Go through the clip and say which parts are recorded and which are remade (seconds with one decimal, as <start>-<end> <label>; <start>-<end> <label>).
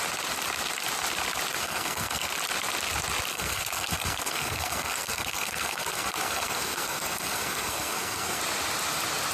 0.0-1.6 recorded; 1.6-2.3 remade; 2.3-3.3 recorded; 3.3-8.4 remade; 8.4-9.3 recorded